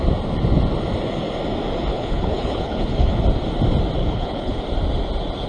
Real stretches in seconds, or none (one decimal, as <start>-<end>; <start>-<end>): 0.0-1.9; 3.2-4.0; 4.6-5.5